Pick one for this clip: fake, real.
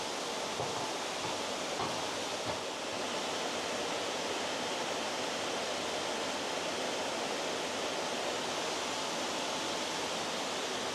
real